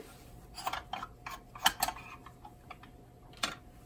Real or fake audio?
real